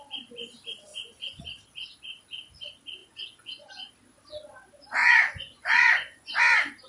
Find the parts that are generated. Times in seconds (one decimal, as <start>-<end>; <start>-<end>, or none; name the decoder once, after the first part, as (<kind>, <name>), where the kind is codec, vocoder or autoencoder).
0.9-1.4 (vocoder, Vocos); 3.0-3.9; 5.0-6.4